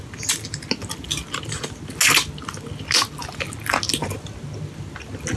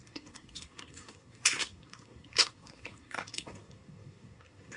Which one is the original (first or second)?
first